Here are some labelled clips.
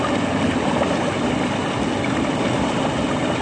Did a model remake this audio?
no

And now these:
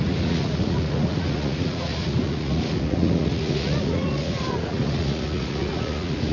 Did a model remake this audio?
yes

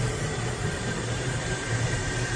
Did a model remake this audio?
yes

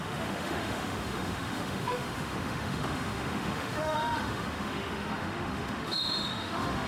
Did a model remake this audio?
yes